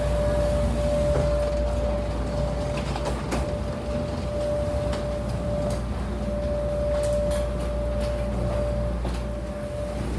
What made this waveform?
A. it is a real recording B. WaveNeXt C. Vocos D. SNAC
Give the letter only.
A